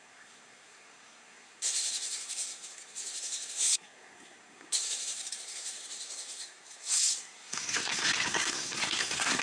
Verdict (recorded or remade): remade